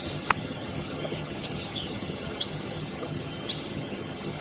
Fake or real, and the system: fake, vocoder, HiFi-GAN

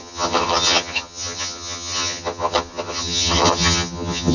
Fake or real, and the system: fake, vocoder, HiFi-GAN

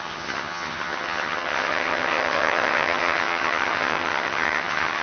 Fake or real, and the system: fake, vocoder, HiFi-GAN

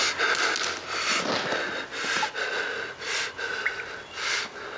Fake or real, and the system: real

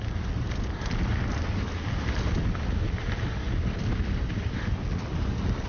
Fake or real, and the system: real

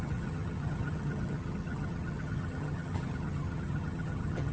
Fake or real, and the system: fake, vocoder, HiFi-GAN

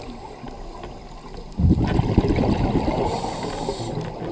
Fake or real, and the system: real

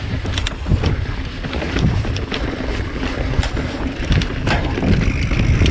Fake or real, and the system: real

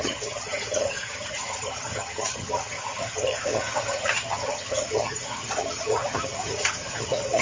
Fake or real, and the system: fake, vocoder, HiFi-GAN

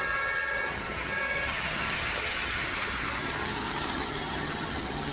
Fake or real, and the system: fake, vocoder, HiFi-GAN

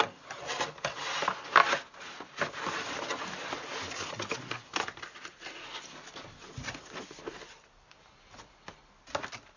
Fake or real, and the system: real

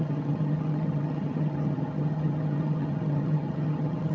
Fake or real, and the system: fake, vocoder, HiFi-GAN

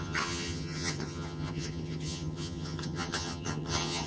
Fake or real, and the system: fake, vocoder, HiFi-GAN